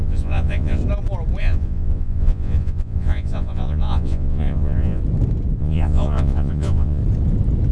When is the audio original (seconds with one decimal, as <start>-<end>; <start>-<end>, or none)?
0.8-1.4; 5.0-5.6; 7.0-7.7

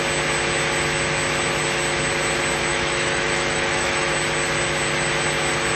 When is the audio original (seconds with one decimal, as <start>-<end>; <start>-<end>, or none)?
0.0-2.7; 4.1-5.8

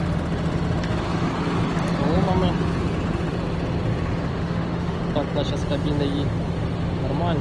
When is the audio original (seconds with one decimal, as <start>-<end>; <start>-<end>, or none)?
0.0-4.3; 5.0-7.4

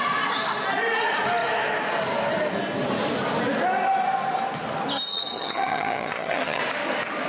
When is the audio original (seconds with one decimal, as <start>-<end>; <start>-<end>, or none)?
0.0-5.1; 6.6-7.3

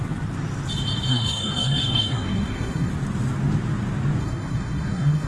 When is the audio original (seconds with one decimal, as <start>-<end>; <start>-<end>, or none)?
0.0-1.1; 2.9-4.2

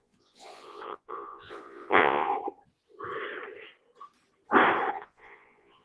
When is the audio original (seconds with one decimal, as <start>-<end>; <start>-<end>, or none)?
2.3-4.9

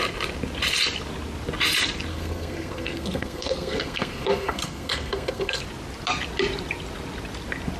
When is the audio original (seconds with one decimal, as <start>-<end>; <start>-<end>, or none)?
0.0-2.1; 5.6-7.8